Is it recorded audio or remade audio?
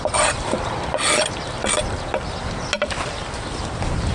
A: recorded